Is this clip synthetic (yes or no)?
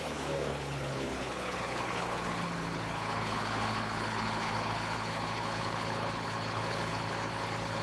yes